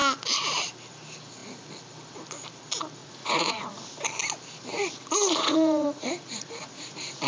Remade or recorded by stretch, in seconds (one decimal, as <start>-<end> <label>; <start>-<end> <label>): 0.0-3.0 recorded; 3.0-3.7 remade; 3.7-4.7 recorded; 4.7-7.3 remade